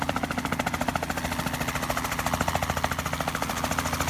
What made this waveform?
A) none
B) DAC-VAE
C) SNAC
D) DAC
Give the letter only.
A